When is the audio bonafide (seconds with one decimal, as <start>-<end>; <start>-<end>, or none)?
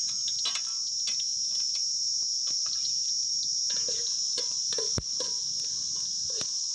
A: 0.0-6.7